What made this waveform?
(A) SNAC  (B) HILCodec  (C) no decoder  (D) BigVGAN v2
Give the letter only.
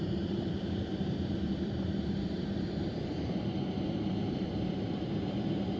D